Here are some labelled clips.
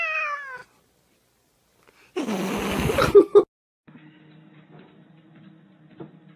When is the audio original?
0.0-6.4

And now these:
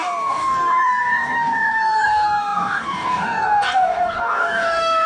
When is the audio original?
none